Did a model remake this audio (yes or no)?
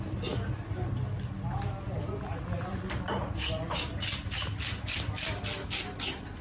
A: no